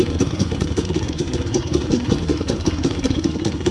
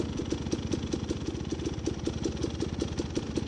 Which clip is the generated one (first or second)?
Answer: first